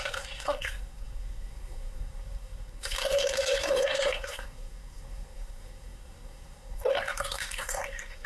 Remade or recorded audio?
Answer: remade